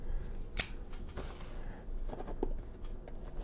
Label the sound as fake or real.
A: real